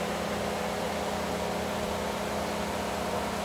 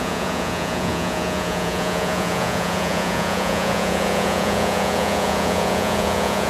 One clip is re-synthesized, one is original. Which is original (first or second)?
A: first